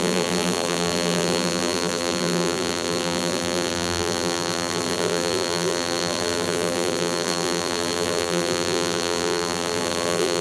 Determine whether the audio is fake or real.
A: fake